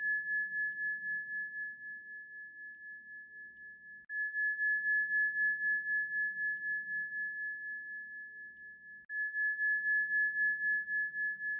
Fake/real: real